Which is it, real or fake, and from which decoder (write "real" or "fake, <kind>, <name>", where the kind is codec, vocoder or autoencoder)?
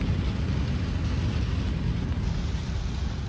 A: real